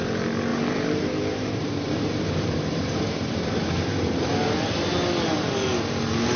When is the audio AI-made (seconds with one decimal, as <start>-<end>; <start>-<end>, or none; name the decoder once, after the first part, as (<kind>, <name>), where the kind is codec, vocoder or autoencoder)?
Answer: 0.5-4.3 (vocoder, BigVGAN v2)